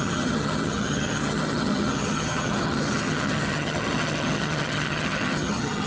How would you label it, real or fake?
fake